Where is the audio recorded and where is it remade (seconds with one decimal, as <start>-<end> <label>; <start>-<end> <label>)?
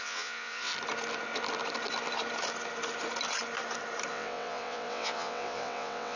0.0-0.7 remade; 0.7-4.1 recorded; 4.1-6.2 remade